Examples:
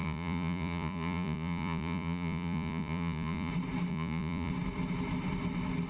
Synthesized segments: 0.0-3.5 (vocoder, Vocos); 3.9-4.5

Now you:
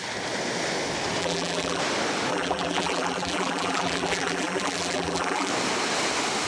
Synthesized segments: 1.2-1.8 (vocoder, BigVGAN v2); 2.3-5.5

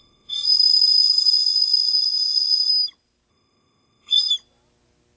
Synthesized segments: 0.0-2.7 (codec, ZipCodec); 3.3-4.3